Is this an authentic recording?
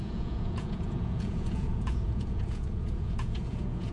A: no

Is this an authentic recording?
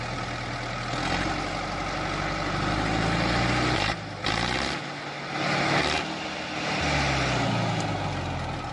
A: yes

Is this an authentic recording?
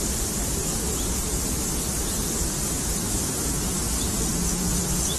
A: yes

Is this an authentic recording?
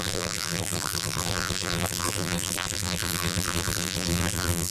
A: no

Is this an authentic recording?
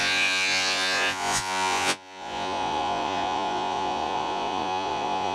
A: no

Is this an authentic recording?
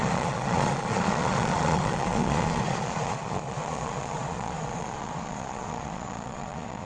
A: no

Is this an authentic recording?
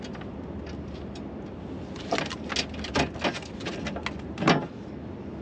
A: yes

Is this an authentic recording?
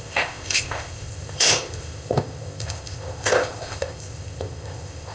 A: no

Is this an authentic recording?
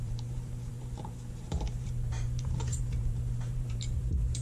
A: no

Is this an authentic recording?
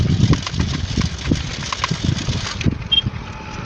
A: yes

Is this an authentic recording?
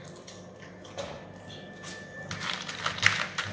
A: yes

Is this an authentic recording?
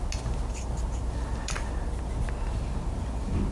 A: yes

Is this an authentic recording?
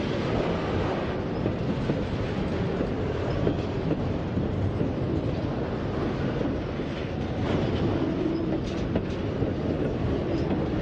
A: yes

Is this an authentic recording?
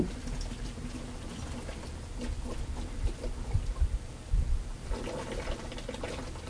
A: yes